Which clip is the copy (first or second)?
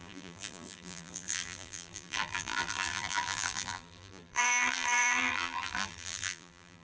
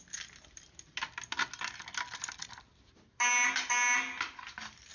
first